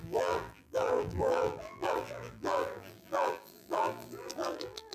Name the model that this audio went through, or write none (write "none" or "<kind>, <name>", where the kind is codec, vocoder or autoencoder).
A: vocoder, BigVGAN v2